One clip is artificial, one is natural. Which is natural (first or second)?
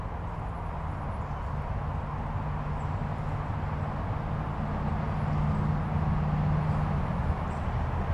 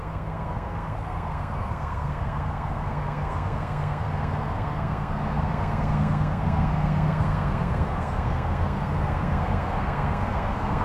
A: first